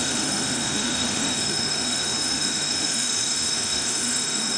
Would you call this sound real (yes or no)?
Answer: no